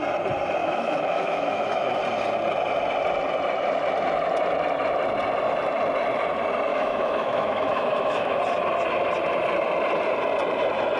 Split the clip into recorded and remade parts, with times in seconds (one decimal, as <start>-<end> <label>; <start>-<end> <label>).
0.0-0.6 recorded; 0.6-2.0 remade; 2.0-6.7 recorded; 6.7-8.4 remade; 8.4-11.0 recorded